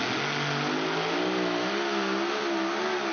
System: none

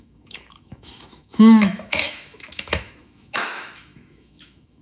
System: autoencoder, DAC-VAE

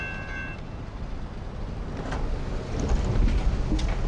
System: none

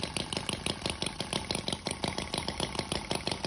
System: none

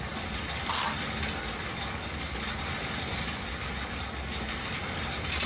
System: none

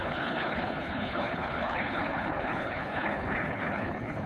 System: codec, HILCodec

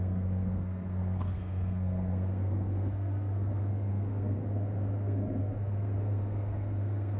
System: codec, SNAC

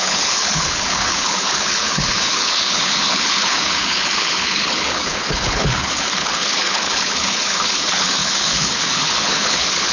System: codec, HILCodec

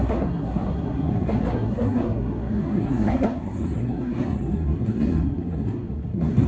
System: codec, SNAC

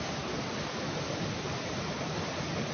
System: none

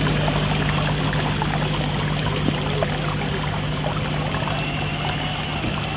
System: none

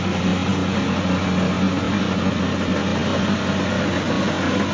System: none